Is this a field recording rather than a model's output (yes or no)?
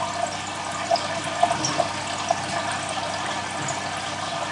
yes